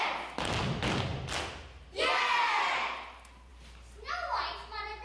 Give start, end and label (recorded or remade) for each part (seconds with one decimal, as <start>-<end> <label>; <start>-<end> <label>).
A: 0.0-5.0 recorded